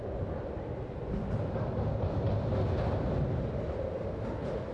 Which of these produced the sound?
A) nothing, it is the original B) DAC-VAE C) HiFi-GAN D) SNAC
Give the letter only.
A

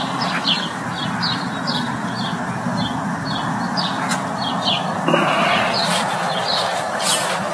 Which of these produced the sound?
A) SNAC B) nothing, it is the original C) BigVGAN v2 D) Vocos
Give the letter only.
B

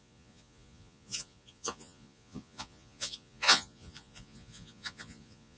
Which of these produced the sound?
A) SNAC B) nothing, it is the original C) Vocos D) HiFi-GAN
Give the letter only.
C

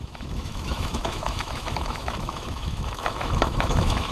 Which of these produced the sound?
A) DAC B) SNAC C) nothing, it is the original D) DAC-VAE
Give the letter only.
D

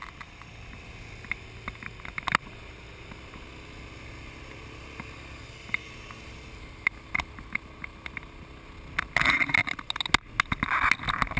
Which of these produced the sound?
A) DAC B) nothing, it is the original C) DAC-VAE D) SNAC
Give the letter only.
B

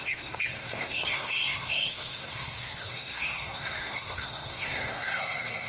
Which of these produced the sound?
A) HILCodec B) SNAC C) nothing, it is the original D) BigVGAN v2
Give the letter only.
B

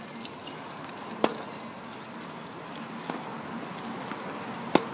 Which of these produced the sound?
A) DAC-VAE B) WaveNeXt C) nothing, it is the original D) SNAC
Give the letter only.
C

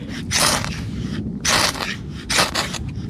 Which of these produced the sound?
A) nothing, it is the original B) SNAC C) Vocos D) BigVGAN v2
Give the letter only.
A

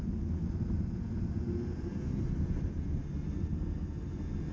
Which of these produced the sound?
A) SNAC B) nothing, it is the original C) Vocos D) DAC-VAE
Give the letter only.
B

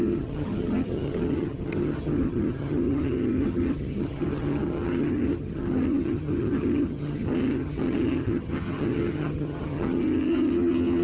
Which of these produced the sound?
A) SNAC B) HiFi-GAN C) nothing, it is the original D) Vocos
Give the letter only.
B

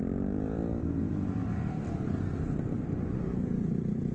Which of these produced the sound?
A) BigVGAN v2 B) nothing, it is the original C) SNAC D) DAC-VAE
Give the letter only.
A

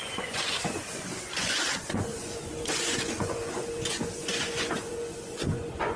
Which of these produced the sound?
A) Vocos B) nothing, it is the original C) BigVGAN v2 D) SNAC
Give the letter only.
A